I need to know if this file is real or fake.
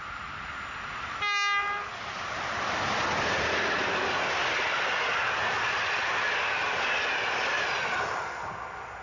real